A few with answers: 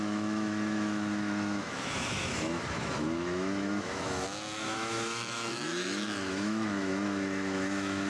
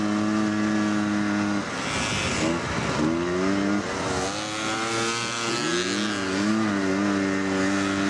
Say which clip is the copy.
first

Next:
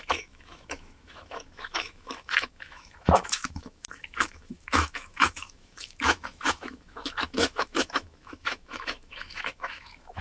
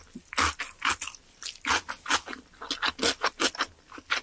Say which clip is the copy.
first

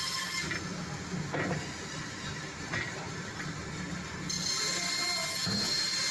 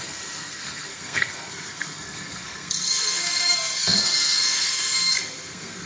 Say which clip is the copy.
second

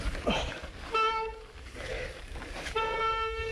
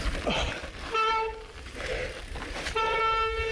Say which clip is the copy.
first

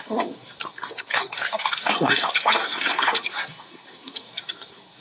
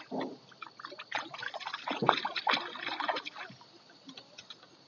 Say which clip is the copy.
first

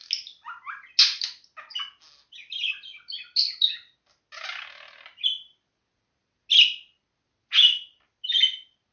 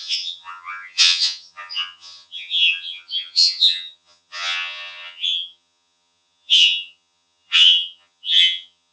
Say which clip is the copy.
second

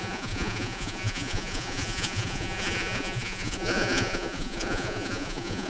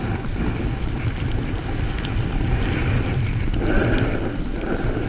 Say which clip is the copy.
first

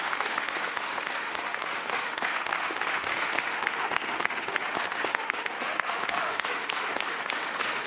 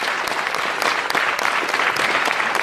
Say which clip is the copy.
first